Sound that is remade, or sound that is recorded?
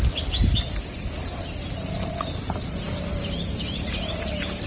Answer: recorded